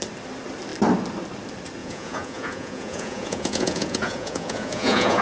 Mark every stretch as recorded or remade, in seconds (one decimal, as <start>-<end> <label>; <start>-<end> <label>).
0.0-1.8 recorded; 1.8-5.2 remade